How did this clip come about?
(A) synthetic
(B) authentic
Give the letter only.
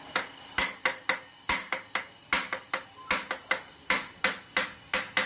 B